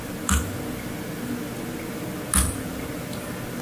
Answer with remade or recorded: recorded